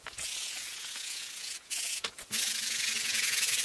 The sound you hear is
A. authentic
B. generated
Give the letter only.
B